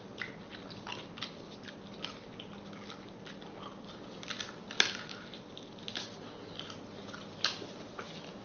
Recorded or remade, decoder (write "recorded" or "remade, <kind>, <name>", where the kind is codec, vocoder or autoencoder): recorded